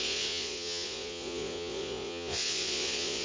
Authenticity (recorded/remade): remade